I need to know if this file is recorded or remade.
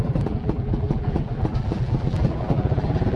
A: remade